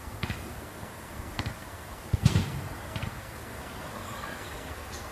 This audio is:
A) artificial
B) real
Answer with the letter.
A